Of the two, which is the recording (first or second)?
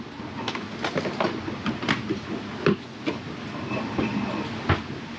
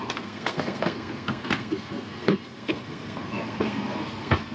first